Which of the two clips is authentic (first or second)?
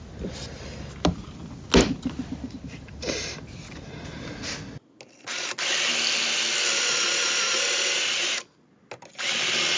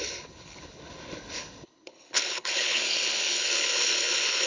first